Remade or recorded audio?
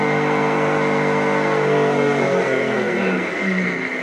remade